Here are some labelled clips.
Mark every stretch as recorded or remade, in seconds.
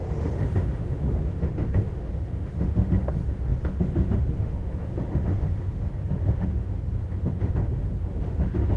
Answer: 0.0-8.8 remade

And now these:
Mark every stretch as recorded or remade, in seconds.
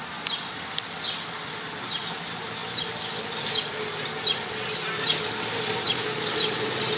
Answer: 0.0-7.0 recorded